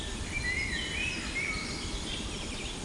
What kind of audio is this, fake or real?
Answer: real